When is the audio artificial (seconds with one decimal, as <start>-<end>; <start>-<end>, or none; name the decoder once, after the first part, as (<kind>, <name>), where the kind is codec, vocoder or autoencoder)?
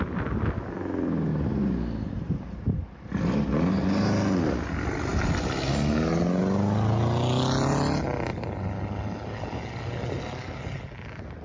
none